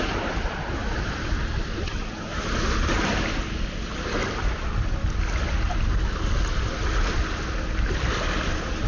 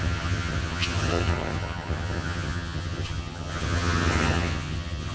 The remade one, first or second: second